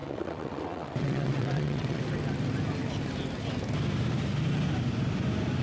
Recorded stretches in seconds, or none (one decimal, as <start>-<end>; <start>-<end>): 2.0-5.6